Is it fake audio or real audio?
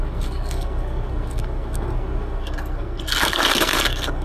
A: fake